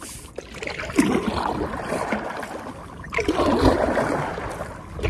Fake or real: fake